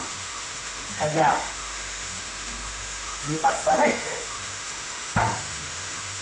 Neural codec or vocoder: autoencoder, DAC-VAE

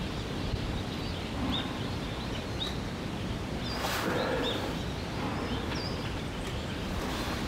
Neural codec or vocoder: none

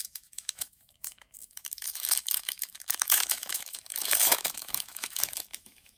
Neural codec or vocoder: autoencoder, DAC-VAE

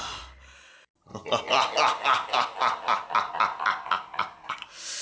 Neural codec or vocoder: none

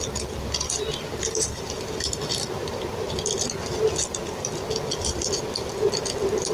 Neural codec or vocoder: none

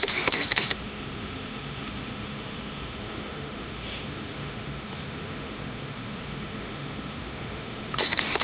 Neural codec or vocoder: autoencoder, DAC-VAE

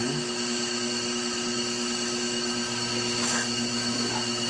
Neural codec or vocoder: autoencoder, DAC-VAE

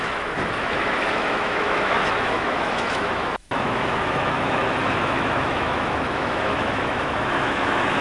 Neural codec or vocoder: autoencoder, DAC-VAE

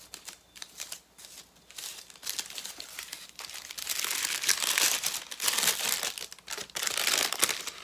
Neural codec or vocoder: none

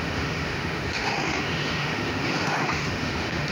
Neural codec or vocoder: autoencoder, DAC-VAE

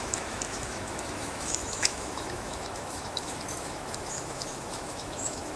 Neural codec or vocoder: autoencoder, DAC-VAE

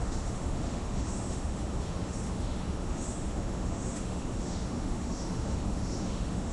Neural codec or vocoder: autoencoder, DAC-VAE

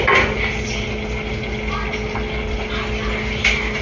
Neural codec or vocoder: none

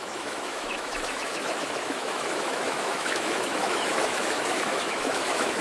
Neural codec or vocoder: autoencoder, DAC-VAE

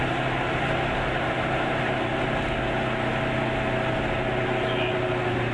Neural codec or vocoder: none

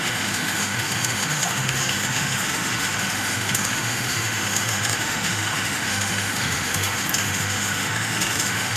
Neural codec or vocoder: autoencoder, DAC-VAE